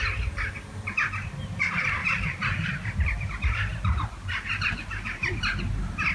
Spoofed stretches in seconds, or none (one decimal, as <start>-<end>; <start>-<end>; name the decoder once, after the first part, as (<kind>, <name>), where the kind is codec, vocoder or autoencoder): 2.0-5.6 (vocoder, BigVGAN v2)